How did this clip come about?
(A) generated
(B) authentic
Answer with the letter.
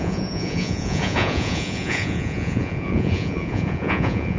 A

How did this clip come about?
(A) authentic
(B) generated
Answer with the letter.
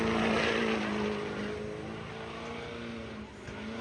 A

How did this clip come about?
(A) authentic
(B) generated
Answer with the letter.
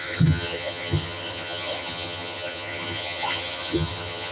B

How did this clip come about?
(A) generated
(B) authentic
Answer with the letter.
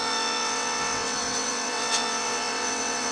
A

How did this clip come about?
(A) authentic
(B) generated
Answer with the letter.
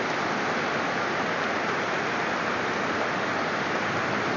A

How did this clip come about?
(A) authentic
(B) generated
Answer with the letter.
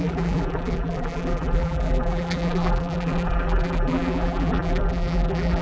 B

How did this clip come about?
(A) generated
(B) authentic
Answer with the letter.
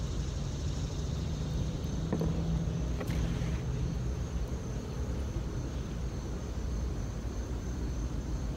B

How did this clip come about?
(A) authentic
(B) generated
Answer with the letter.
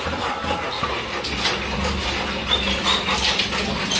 A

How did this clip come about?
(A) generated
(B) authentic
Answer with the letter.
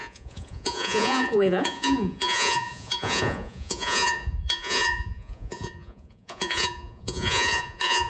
A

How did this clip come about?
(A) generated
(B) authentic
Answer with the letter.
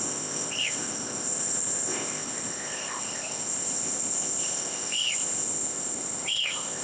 A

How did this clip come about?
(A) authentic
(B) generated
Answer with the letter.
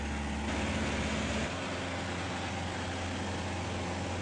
A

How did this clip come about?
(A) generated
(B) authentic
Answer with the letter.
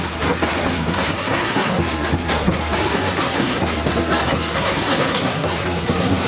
A